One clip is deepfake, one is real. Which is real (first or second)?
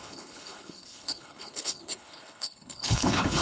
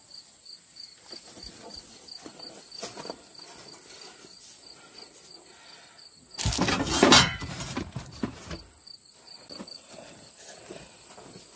second